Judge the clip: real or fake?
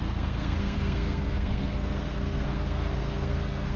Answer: fake